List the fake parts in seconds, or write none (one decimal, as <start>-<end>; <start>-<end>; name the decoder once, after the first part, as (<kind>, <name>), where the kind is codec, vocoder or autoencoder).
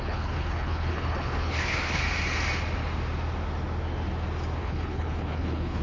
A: 0.0-2.0 (codec, HILCodec); 4.6-5.8